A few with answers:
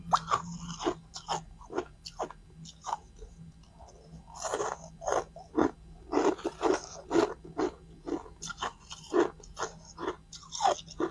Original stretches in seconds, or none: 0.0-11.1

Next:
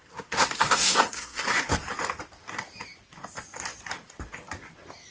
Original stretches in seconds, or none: 1.7-5.1

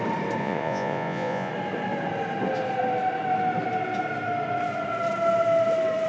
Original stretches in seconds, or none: 0.0-0.4; 1.5-6.1

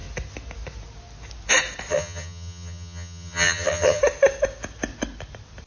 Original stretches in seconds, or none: 0.0-1.9; 4.0-5.7

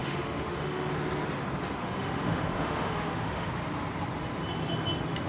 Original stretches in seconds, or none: 0.9-1.8; 3.5-5.3